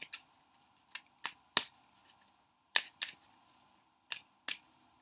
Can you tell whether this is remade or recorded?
recorded